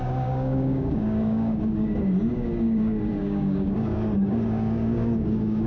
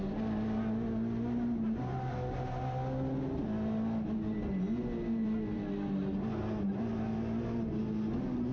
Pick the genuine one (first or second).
second